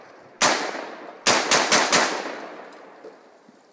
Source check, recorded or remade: recorded